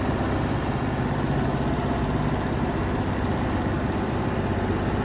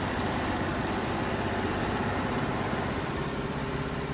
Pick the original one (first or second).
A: first